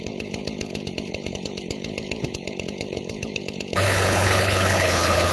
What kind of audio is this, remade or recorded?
remade